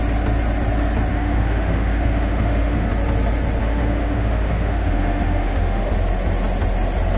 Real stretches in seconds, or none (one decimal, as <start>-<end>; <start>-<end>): 0.0-1.1; 2.9-3.6; 5.9-7.2